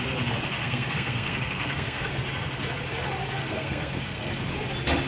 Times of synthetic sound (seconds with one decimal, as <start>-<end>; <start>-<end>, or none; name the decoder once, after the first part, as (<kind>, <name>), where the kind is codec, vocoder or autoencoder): 0.6-2.1 (codec, SNAC); 3.4-4.3